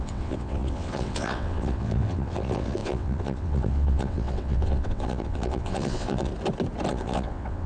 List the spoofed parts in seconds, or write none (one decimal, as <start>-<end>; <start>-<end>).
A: 0.0-6.3; 6.9-7.7